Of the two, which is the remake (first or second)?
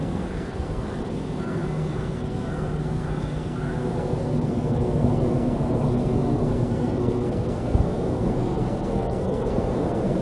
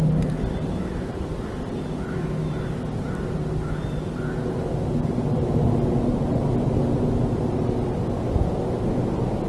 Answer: first